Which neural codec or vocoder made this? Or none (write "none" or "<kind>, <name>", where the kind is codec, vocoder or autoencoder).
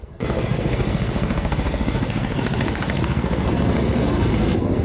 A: codec, SNAC